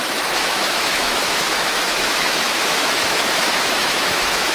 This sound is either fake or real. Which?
fake